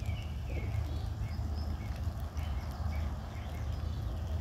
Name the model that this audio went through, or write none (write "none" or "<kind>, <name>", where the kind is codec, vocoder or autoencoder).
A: none